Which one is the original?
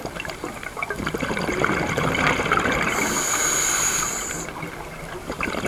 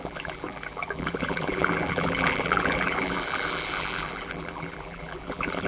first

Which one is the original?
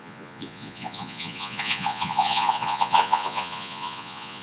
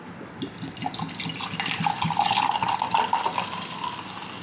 second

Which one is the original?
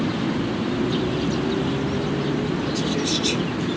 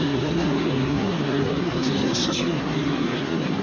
first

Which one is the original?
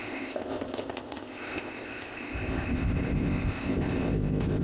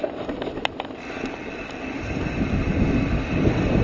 second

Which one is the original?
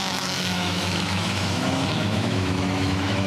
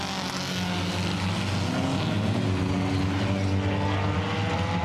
second